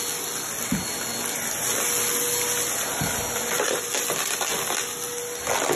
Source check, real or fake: real